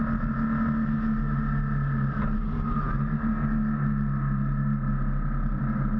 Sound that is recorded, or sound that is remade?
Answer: recorded